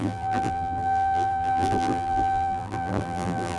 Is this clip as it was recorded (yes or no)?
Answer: no